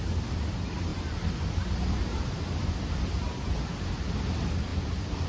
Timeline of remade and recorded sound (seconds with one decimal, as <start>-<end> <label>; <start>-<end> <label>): 0.0-5.3 recorded